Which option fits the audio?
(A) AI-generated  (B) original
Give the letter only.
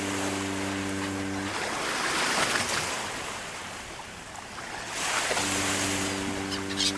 B